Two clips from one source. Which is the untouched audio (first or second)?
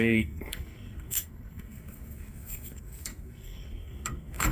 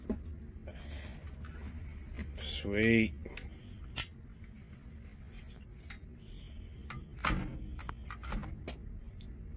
second